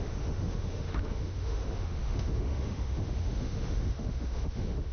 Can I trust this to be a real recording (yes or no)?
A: no